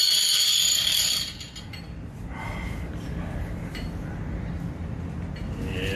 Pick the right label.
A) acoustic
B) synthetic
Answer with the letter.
A